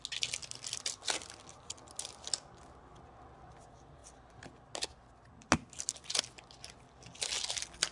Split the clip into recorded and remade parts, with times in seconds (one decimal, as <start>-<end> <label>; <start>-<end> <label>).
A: 0.0-0.4 recorded; 0.4-1.3 remade; 1.3-7.9 recorded